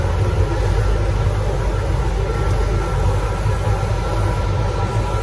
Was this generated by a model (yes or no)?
no